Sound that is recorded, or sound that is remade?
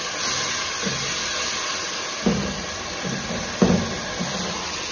recorded